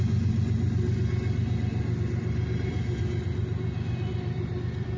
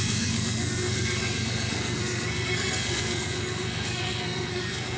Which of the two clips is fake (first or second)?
second